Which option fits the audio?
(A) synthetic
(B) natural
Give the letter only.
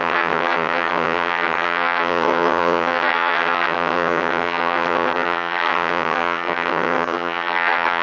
A